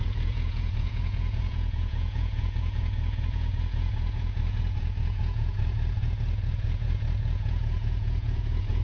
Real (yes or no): no